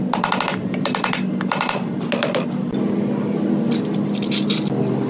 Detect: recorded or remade recorded